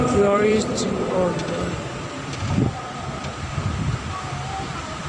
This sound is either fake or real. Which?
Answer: fake